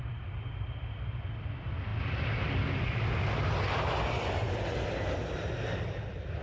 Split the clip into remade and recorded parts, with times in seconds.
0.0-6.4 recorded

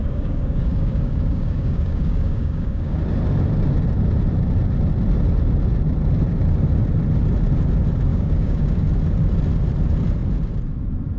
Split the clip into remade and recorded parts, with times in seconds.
0.0-3.0 remade; 3.0-8.1 recorded; 8.1-8.8 remade; 8.8-11.2 recorded

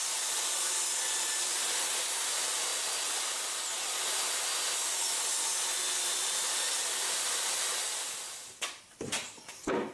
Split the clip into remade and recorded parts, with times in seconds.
0.0-2.7 remade; 2.7-5.9 recorded; 5.9-9.9 remade

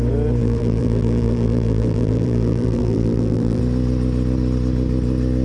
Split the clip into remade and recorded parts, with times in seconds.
0.0-0.4 recorded; 0.4-3.6 remade; 3.6-5.4 recorded

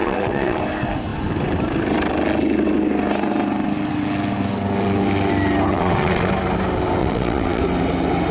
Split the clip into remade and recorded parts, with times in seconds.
0.0-0.6 remade; 0.6-5.7 recorded; 5.7-6.3 remade; 6.3-7.0 recorded; 7.0-7.6 remade; 7.6-8.3 recorded

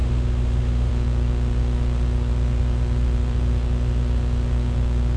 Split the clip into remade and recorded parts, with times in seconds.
0.0-0.9 remade; 0.9-5.2 recorded

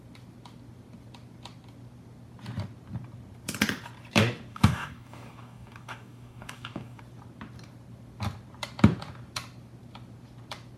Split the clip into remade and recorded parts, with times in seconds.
0.0-4.5 recorded; 4.5-7.0 remade; 7.0-10.8 recorded